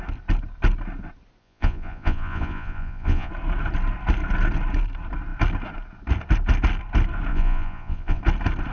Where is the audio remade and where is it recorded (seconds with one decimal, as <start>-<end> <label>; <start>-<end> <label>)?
0.0-1.4 recorded; 1.4-3.3 remade; 3.3-7.3 recorded; 7.3-8.2 remade; 8.2-8.7 recorded